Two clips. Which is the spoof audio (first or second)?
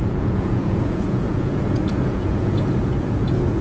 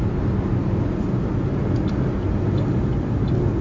first